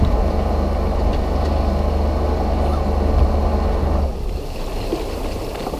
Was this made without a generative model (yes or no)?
yes